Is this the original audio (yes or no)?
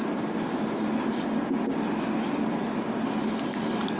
yes